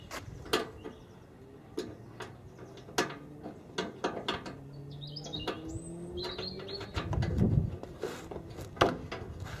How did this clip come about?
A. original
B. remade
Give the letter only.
A